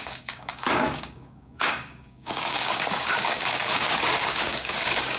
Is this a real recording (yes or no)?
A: no